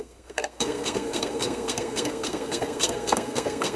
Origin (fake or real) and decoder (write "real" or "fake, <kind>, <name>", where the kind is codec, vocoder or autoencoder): fake, codec, SNAC